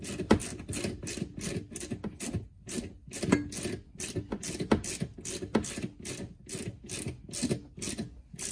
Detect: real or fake real